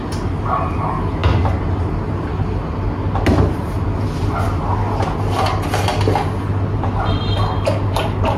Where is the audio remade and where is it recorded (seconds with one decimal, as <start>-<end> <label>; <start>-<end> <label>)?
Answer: 0.0-8.4 recorded